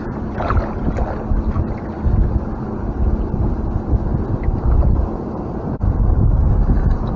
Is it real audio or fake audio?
real